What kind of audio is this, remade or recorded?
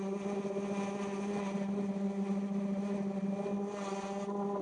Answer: recorded